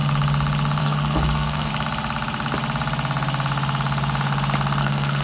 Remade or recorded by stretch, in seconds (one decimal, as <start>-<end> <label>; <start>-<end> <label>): 0.0-0.8 recorded; 0.8-1.7 remade; 1.7-4.8 recorded; 4.8-5.2 remade

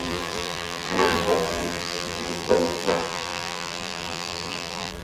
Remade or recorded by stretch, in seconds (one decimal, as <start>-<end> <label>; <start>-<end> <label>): 0.0-5.0 remade

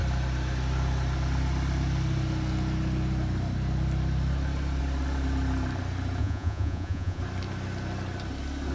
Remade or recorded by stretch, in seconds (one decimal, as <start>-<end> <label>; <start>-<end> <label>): 0.0-6.2 recorded; 6.2-7.2 remade; 7.2-8.7 recorded